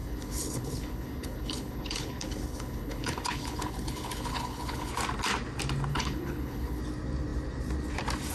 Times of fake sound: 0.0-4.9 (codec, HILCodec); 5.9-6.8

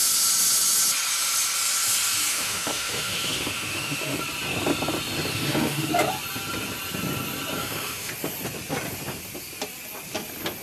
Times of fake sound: 2.3-4.2 (autoencoder, DAC-VAE); 5.3-5.9; 7.6-8.1

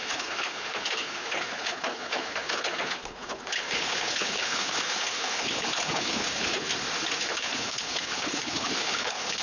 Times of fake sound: 0.0-6.7 (codec, HILCodec); 7.2-9.4

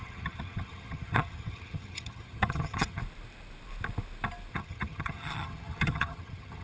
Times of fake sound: 0.0-3.0 (vocoder, HiFi-GAN); 4.5-6.6

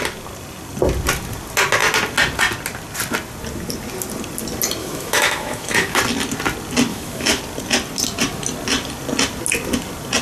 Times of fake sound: 4.8-6.0 (autoencoder, DAC-VAE); 6.9-7.4